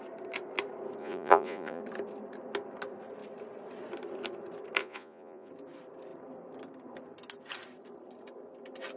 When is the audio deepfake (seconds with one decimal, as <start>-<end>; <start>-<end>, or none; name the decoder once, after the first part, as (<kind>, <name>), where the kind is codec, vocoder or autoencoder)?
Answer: 1.0-1.8 (vocoder, Vocos); 4.8-5.5